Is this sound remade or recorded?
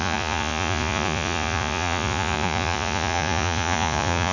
remade